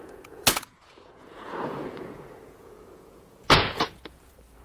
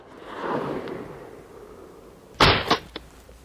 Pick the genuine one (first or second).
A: second